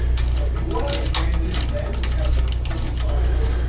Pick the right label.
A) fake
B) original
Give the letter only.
B